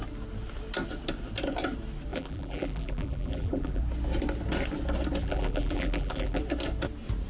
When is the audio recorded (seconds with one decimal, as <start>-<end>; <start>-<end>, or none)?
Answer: 0.0-2.1; 3.8-5.2; 6.4-7.3